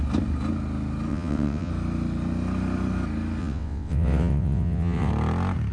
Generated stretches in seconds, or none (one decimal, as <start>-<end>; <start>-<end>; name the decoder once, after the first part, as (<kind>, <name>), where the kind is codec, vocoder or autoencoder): 1.1-1.7 (vocoder, WaveNeXt); 3.4-5.1